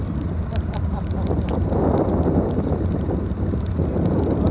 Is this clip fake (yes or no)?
no